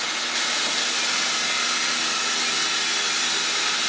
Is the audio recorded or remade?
recorded